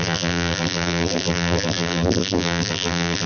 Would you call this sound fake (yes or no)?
yes